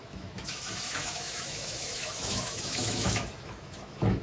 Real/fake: fake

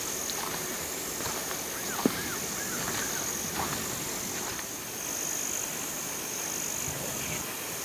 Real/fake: real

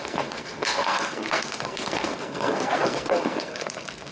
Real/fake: fake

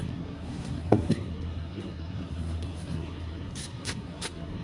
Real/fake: fake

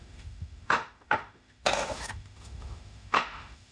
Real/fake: fake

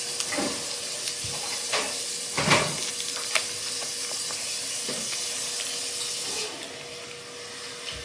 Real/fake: real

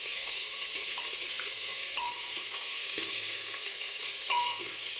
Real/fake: fake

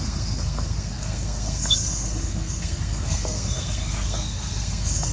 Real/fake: fake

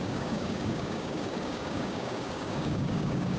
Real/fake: fake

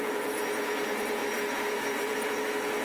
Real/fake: fake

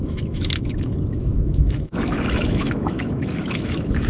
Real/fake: fake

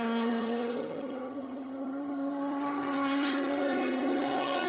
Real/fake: fake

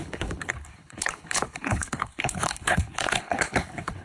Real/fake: fake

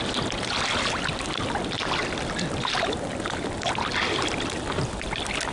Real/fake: real